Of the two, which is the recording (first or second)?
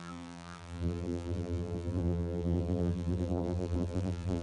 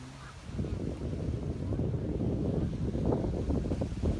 second